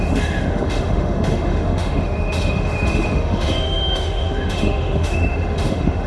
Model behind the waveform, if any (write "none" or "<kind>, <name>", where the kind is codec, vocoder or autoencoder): autoencoder, DAC-VAE